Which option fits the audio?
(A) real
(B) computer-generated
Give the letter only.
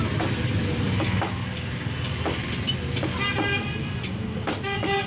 A